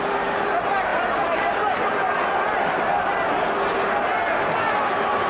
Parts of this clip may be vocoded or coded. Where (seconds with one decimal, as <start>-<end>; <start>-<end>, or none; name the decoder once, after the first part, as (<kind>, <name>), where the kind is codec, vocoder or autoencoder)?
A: none